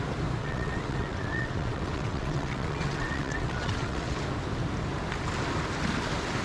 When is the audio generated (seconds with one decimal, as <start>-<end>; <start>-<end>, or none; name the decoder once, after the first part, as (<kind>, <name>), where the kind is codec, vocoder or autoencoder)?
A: 0.4-4.2 (vocoder, WaveNeXt)